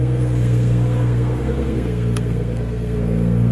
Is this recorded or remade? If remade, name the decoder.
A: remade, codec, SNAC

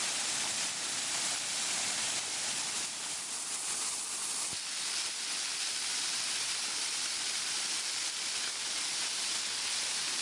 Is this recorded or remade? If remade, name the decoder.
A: recorded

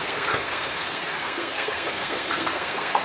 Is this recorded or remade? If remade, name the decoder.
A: remade, codec, SNAC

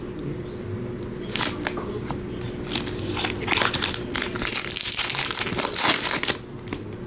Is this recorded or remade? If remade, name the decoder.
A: recorded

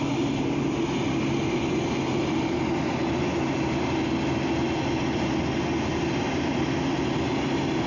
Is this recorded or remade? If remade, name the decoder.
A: recorded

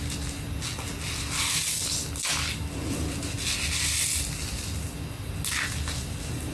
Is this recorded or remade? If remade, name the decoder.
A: recorded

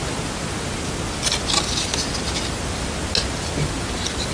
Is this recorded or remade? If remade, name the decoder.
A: recorded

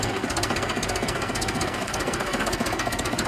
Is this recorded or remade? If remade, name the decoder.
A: remade, codec, SNAC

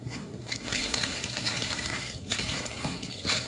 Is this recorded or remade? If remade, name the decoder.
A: remade, codec, SNAC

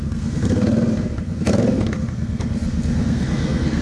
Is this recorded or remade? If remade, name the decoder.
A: remade, codec, SNAC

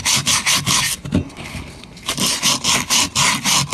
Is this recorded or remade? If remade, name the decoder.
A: recorded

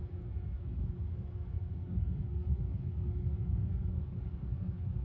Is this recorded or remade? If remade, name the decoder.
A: remade, codec, SNAC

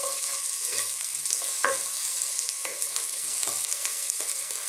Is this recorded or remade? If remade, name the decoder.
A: remade, codec, SNAC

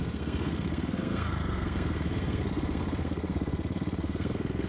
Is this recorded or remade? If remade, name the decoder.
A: remade, codec, SNAC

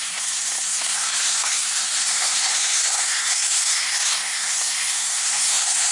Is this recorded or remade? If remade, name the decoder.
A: remade, codec, SNAC